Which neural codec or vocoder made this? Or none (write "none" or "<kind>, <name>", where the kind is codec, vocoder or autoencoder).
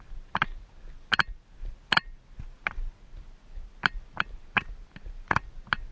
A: none